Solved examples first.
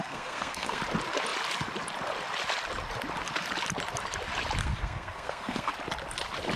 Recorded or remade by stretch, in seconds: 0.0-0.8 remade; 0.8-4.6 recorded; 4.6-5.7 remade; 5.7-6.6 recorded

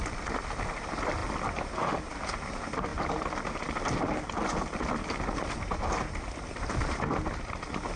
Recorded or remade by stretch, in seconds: 0.0-8.0 recorded

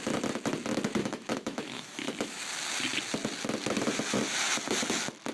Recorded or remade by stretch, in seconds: 0.0-1.0 recorded; 1.0-2.4 remade; 2.4-5.3 recorded

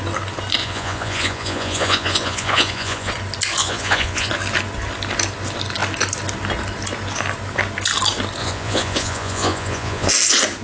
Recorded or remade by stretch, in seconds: 0.0-0.6 recorded; 0.6-3.1 remade; 3.1-3.6 recorded; 3.6-4.3 remade; 4.3-8.4 recorded; 8.4-10.1 remade; 10.1-10.6 recorded

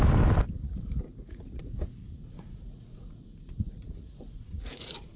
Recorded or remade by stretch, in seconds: 0.0-0.6 recorded; 0.6-1.6 remade; 1.6-2.0 recorded; 2.0-5.2 remade

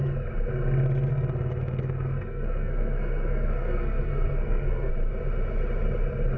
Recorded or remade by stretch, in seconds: 0.0-1.1 recorded; 1.1-4.9 remade; 4.9-6.4 recorded